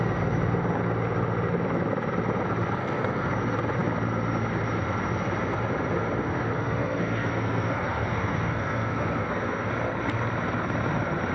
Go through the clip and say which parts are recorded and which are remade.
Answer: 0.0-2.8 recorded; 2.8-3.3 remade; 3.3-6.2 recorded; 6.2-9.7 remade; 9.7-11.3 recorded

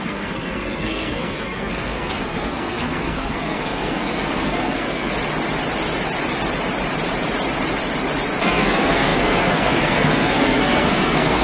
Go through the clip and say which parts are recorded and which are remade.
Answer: 0.0-5.1 remade; 5.1-8.4 recorded; 8.4-11.4 remade